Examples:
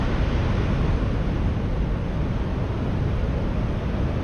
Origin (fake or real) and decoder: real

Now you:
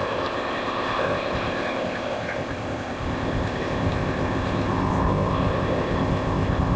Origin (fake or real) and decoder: fake, codec, ZipCodec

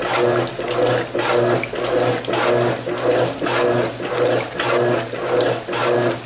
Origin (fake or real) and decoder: real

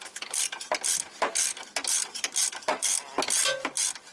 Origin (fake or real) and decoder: real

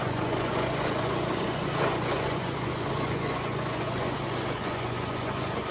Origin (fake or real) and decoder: fake, vocoder, Vocos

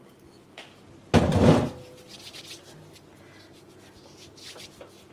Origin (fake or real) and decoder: real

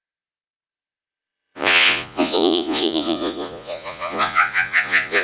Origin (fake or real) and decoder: fake, vocoder, Vocos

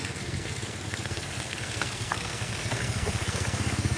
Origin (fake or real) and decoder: fake, codec, SNAC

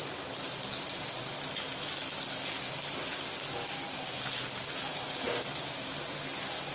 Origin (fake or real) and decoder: real